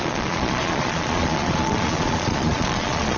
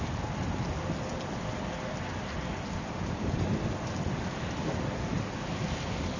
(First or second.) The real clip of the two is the second